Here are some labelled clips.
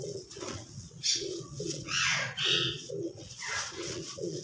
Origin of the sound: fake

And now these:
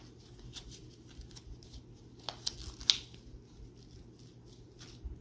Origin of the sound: real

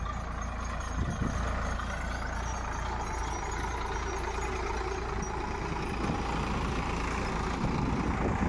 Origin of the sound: real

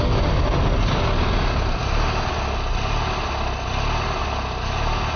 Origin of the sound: real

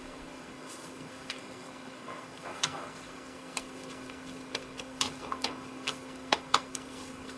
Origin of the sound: fake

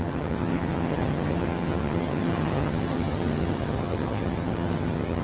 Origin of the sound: fake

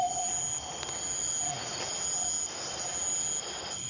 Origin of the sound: real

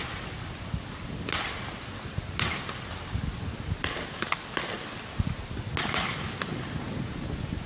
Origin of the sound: real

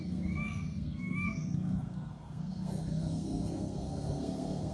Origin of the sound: fake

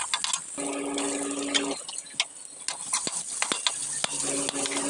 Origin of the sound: real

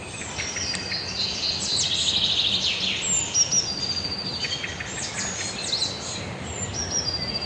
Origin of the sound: real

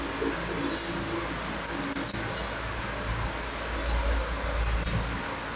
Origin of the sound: real